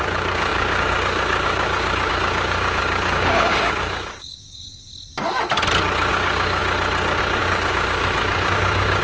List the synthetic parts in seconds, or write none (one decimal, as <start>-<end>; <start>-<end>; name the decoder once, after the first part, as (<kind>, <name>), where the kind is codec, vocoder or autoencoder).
0.0-4.9 (codec, DAC); 6.1-6.6; 7.2-9.0